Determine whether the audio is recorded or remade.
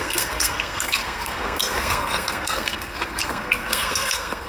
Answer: remade